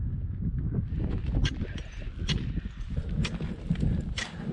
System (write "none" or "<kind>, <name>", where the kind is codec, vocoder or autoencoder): none